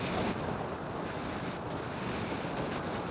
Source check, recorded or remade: recorded